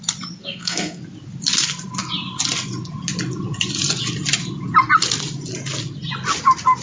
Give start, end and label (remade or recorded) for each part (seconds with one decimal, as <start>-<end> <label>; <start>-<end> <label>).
0.0-0.4 recorded; 0.4-1.0 remade; 1.0-6.8 recorded